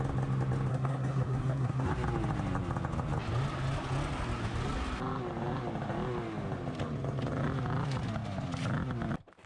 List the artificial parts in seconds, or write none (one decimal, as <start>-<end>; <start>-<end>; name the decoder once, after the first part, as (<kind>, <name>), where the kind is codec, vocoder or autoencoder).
0.7-1.9 (codec, SNAC)